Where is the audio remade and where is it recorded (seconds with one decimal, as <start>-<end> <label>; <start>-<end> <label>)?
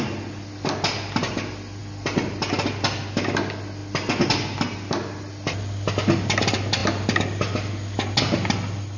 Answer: 0.0-9.0 recorded